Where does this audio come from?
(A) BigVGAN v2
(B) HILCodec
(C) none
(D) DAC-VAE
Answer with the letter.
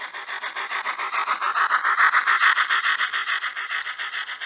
C